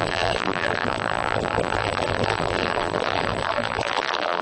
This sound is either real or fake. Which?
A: fake